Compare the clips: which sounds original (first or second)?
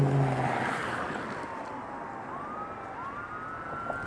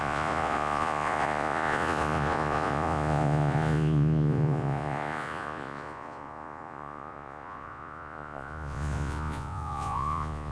first